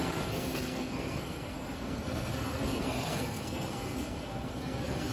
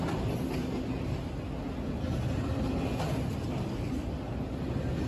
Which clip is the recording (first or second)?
second